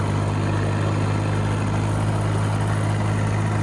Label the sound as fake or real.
real